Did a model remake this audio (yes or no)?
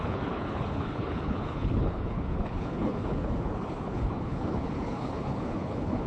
yes